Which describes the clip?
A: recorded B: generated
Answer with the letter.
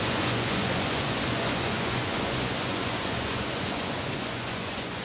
B